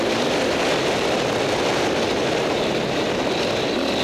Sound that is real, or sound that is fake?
real